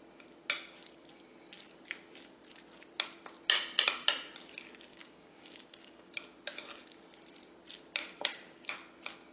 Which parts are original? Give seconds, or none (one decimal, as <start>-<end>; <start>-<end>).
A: 0.0-4.9; 6.1-8.0; 8.7-9.3